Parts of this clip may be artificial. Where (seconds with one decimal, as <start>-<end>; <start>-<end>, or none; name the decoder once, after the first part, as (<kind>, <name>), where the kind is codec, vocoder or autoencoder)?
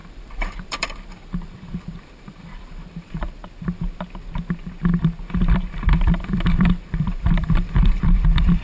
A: 0.0-3.4 (vocoder, BigVGAN v2); 5.9-8.6